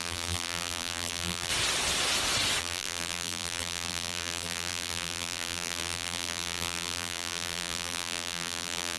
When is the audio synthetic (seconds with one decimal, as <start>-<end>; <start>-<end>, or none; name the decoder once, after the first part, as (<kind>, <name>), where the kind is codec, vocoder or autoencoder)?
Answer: 0.0-1.5 (vocoder, BigVGAN v2); 2.6-9.0